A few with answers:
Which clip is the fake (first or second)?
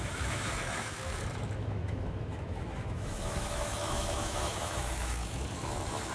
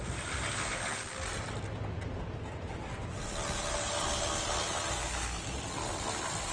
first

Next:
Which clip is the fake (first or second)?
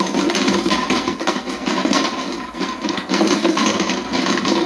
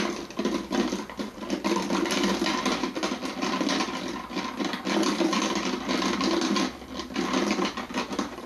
first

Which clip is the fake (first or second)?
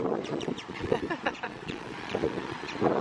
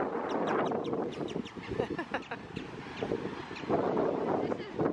first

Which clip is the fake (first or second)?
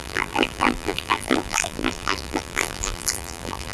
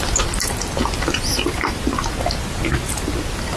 first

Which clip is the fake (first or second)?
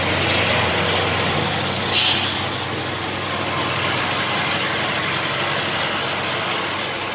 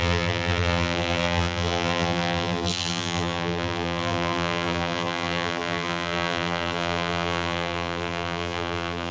second